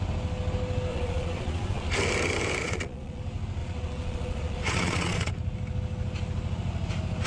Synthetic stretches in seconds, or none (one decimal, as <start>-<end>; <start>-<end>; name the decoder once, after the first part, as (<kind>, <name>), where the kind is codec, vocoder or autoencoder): 0.9-1.9 (vocoder, Vocos); 2.6-3.2; 3.6-5.3